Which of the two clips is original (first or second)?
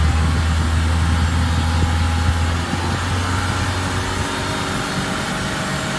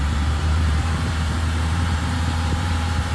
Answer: first